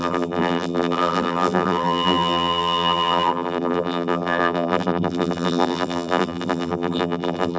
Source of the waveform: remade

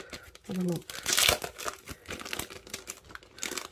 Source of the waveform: recorded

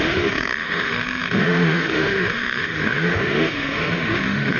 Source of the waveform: remade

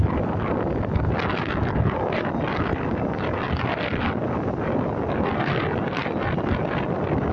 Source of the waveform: recorded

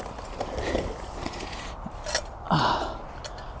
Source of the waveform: recorded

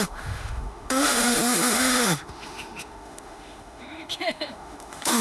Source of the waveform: remade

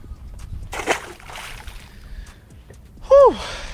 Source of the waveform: recorded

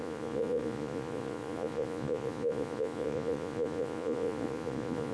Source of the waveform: remade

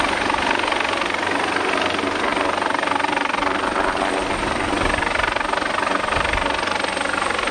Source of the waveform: recorded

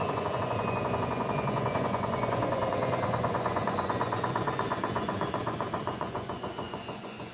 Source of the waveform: remade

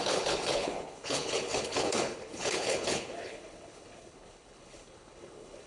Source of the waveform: remade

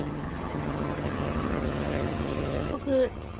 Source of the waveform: remade